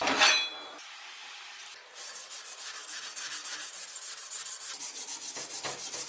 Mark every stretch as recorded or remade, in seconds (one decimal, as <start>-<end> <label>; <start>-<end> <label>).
0.0-6.1 recorded

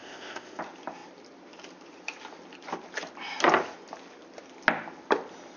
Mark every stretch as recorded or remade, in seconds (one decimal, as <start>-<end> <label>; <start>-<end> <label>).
0.0-0.6 remade; 0.6-5.6 recorded